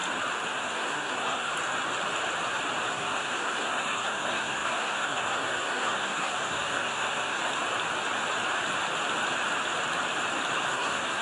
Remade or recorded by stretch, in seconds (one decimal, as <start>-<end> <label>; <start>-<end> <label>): 0.0-0.5 recorded; 0.5-1.5 remade; 1.5-2.9 recorded; 2.9-7.4 remade; 7.4-10.7 recorded; 10.7-11.2 remade